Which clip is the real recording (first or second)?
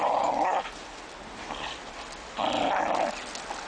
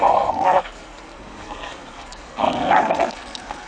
first